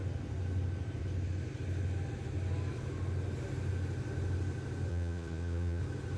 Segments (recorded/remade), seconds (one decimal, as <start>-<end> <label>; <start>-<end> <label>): 0.0-4.9 recorded; 4.9-5.8 remade; 5.8-6.2 recorded